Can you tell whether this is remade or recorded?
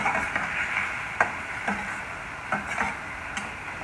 recorded